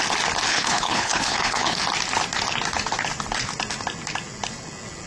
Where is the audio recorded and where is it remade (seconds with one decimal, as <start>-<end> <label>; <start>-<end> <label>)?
0.0-0.5 recorded; 0.5-1.8 remade; 1.8-5.1 recorded